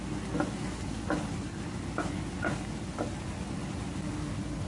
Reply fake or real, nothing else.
real